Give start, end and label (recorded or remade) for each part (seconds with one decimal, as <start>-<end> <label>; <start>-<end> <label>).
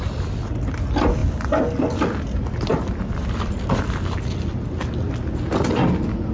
0.0-6.3 recorded